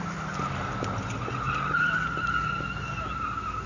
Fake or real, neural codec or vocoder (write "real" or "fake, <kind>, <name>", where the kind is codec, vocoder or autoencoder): real